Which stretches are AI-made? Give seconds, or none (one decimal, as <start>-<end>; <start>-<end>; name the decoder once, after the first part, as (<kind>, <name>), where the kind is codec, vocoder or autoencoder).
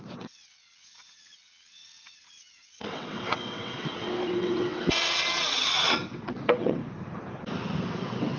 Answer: 0.0-6.8 (vocoder, WaveNeXt); 7.9-8.4